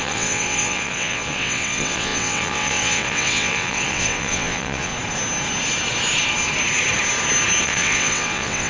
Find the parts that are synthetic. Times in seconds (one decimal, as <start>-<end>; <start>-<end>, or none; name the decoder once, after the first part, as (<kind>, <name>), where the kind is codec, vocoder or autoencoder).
0.0-4.9 (vocoder, WaveNeXt); 7.6-8.7